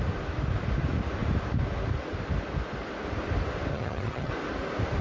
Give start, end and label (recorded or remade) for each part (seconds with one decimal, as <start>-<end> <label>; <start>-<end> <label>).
0.0-3.7 recorded; 3.7-4.3 remade; 4.3-5.0 recorded